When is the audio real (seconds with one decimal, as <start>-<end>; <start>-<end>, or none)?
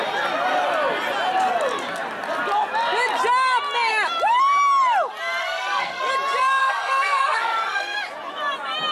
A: 0.0-5.4; 6.1-6.6; 8.0-8.9